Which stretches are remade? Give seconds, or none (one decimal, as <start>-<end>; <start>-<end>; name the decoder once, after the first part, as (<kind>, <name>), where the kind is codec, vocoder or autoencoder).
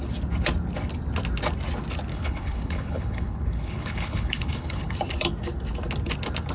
2.1-4.9 (codec, HILCodec)